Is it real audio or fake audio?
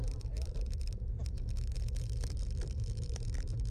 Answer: fake